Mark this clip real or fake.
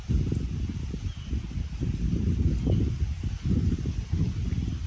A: real